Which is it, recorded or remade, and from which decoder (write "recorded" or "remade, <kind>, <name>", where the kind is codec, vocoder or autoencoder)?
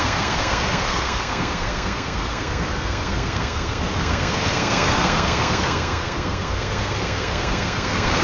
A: remade, codec, SNAC